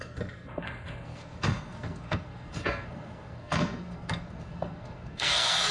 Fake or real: fake